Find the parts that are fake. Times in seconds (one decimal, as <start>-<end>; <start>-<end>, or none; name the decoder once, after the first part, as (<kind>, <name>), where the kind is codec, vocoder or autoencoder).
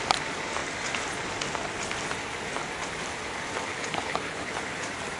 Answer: 3.7-4.5 (codec, HILCodec)